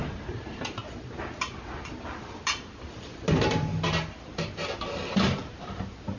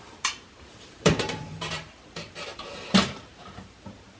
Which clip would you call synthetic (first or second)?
second